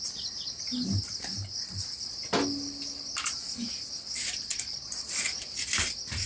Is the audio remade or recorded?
recorded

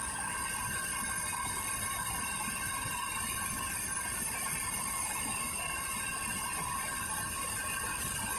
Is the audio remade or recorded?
remade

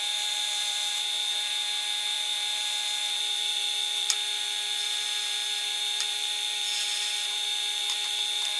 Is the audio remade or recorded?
remade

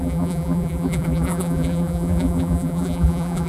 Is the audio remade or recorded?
remade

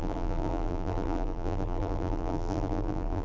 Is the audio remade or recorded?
remade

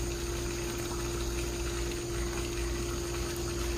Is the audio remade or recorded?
recorded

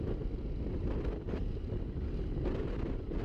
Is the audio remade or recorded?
recorded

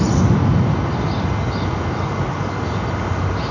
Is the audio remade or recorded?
recorded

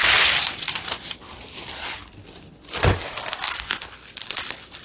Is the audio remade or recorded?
recorded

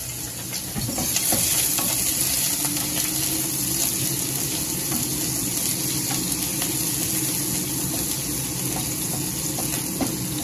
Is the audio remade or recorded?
recorded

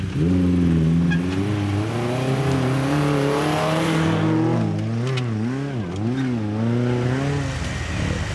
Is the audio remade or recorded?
recorded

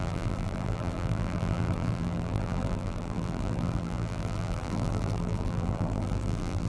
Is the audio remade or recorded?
remade